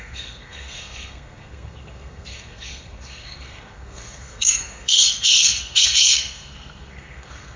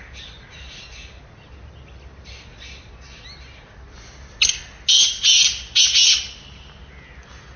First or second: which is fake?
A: first